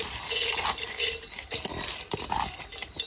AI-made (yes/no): no